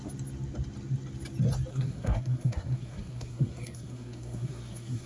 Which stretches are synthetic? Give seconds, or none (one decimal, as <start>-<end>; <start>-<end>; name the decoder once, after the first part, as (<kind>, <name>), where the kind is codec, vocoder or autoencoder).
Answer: 1.7-5.1 (codec, SNAC)